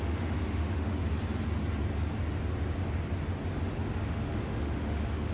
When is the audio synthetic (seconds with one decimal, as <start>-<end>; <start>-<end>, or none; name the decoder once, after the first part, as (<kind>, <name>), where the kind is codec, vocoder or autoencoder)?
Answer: 0.0-1.0 (autoencoder, DAC-VAE); 4.0-5.3

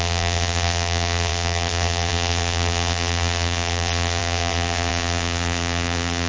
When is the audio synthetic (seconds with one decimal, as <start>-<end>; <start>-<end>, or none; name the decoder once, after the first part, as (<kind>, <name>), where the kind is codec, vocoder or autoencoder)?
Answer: 0.0-6.3 (vocoder, BigVGAN v2)

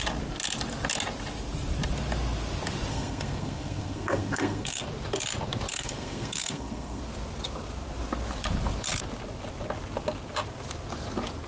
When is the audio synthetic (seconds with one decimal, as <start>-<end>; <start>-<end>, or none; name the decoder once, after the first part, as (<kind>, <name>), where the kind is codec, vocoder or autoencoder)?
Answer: 2.9-4.8 (codec, SNAC); 5.7-7.0

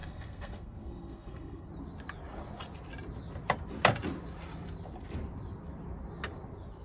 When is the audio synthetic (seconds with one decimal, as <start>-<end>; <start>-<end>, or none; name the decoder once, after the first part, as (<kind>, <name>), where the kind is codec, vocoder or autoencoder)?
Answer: 0.0-1.7 (codec, SNAC)

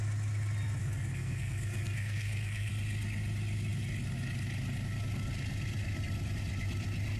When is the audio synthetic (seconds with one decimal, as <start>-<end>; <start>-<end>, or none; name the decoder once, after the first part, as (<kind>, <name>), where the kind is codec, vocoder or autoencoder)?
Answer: 0.8-2.7 (codec, SNAC)